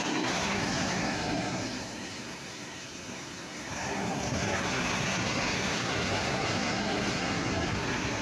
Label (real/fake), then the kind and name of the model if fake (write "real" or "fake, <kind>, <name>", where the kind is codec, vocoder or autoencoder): fake, codec, SNAC